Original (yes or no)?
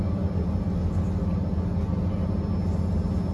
yes